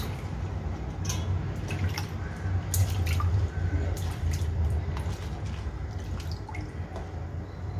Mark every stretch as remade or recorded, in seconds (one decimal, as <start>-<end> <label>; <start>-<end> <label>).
0.0-2.8 recorded; 2.8-4.8 remade; 4.8-7.8 recorded